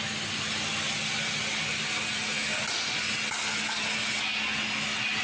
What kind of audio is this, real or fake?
real